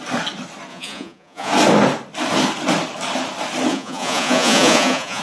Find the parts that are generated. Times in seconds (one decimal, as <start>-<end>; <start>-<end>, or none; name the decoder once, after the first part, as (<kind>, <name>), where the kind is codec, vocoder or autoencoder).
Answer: 0.7-1.5 (vocoder, Vocos); 3.7-5.2